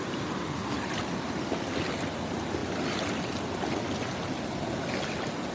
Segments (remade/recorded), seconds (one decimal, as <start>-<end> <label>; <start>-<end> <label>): 0.0-5.5 recorded